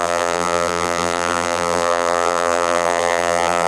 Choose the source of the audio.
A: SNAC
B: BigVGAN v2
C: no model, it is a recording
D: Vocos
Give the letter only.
B